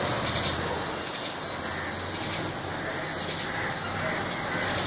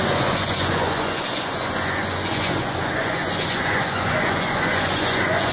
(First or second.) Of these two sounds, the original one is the first